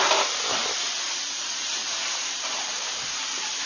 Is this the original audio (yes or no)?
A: no